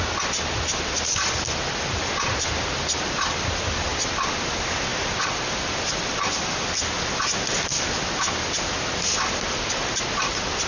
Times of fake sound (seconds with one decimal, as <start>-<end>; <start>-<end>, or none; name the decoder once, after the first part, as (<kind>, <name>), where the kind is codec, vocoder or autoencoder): none